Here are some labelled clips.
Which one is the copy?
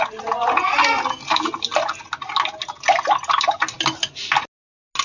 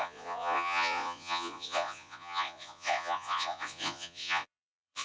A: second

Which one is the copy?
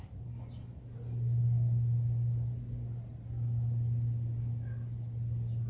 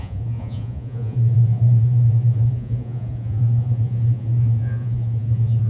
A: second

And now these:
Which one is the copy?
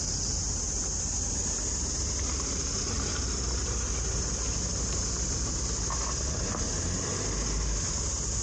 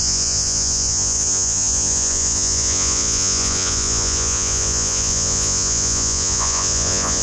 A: second